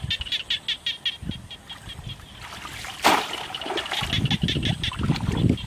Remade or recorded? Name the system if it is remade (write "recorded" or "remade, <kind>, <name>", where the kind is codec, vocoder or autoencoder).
recorded